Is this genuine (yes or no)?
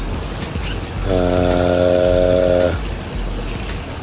yes